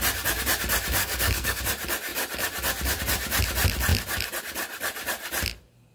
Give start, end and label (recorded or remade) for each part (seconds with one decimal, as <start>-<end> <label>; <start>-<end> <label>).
0.0-1.0 recorded; 1.0-1.6 remade; 1.6-5.9 recorded